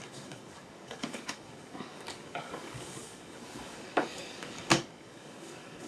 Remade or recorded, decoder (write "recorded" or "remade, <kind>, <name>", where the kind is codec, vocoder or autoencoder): remade, codec, DAC